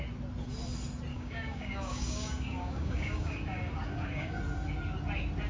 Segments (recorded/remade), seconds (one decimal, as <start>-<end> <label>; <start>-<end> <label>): 0.0-1.1 recorded; 1.1-4.4 remade; 4.4-5.5 recorded